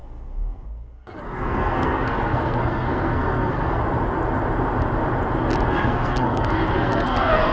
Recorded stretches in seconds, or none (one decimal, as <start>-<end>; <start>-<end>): 3.8-5.7